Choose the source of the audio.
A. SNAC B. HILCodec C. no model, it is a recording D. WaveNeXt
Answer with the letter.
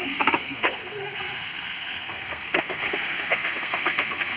A